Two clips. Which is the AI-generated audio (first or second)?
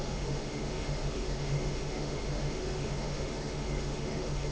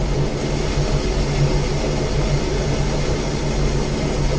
first